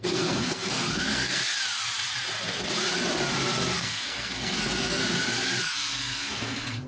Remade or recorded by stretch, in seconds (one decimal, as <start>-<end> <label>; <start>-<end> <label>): 0.0-1.4 remade; 1.4-3.8 recorded; 3.8-5.0 remade; 5.0-5.6 recorded; 5.6-6.9 remade